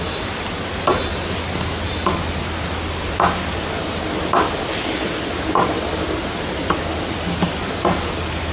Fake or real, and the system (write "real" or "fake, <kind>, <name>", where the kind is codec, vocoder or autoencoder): real